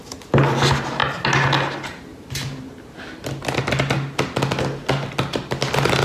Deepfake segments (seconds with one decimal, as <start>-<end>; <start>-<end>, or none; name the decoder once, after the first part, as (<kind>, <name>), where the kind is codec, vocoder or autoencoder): none